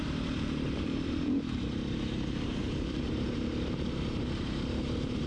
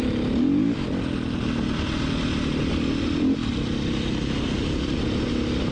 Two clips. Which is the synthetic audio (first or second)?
first